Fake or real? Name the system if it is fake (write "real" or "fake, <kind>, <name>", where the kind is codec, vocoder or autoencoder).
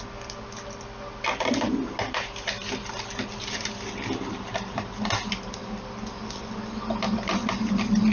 real